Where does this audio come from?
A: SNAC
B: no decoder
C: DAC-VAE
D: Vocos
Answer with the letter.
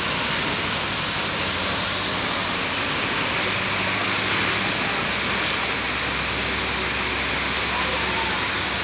B